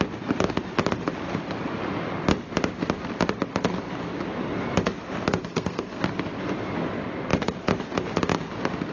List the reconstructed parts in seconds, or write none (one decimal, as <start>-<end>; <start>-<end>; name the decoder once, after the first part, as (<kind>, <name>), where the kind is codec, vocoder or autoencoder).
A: 5.4-6.0 (codec, SNAC)